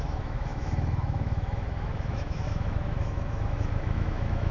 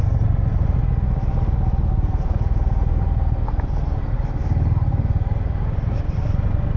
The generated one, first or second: first